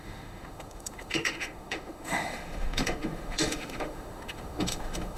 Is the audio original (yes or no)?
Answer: no